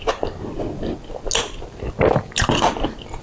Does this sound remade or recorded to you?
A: recorded